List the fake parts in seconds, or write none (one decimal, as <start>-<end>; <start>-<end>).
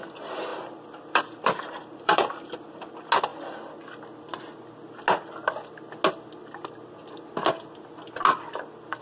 0.5-2.9